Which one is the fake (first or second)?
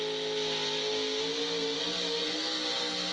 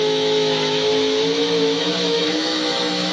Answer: second